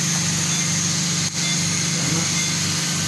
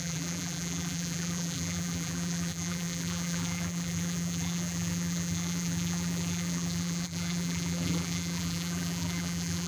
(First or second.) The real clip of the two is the first